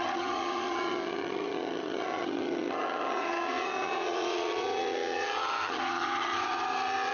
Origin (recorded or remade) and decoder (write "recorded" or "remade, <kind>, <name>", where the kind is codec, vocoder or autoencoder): remade, vocoder, HiFi-GAN